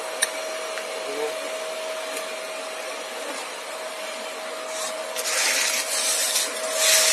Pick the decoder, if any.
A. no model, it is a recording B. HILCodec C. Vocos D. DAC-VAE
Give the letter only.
A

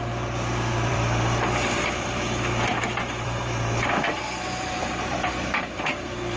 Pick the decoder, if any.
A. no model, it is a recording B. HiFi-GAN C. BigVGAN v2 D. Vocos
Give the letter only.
C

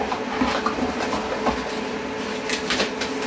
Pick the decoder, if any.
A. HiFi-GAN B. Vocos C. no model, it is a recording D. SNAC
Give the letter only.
C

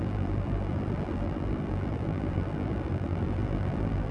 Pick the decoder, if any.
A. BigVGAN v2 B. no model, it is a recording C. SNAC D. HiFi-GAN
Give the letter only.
A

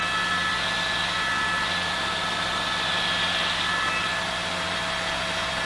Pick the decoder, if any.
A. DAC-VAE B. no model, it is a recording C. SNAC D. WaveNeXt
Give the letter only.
B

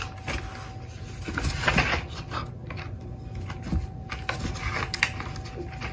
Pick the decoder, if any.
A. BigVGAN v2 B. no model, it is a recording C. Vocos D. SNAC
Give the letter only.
B